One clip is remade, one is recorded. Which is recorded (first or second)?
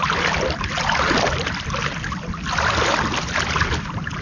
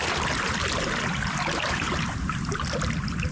first